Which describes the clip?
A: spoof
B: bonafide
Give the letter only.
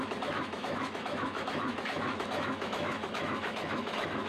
A